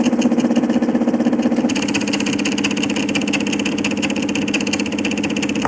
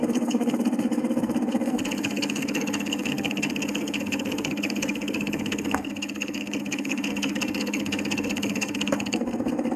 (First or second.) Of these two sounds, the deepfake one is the second